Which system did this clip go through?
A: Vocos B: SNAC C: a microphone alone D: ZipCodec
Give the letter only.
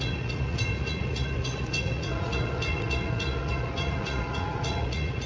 A